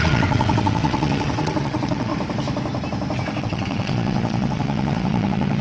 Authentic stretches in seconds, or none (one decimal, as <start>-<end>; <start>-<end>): 2.1-3.4